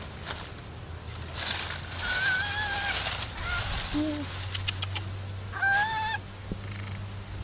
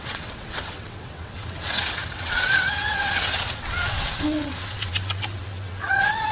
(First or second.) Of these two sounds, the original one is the first